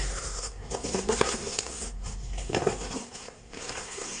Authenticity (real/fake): fake